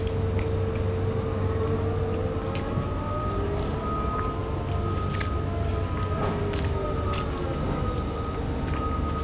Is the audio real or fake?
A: real